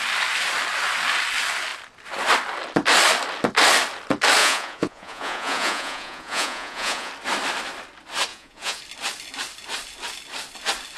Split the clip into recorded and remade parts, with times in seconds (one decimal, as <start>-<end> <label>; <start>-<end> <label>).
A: 0.0-4.4 recorded; 4.4-7.1 remade; 7.1-8.3 recorded; 8.3-8.8 remade; 8.8-11.0 recorded